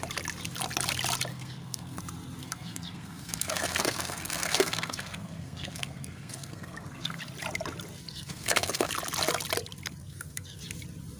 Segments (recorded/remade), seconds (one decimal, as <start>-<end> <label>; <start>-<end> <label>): 0.0-1.3 recorded; 1.3-2.0 remade; 2.0-2.4 recorded; 2.4-7.2 remade; 7.2-8.1 recorded; 8.1-8.9 remade; 8.9-10.0 recorded; 10.0-10.6 remade; 10.6-11.2 recorded